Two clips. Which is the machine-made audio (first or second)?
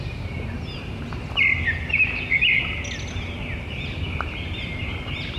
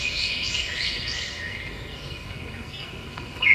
second